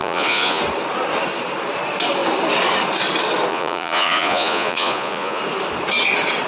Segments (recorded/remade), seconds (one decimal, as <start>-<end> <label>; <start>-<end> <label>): 0.0-0.6 remade; 0.6-3.5 recorded; 3.5-5.4 remade; 5.4-6.5 recorded